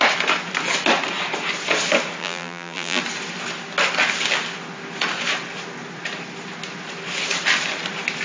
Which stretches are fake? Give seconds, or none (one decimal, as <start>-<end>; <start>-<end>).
2.2-3.0